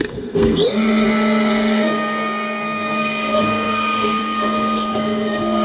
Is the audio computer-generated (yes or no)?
yes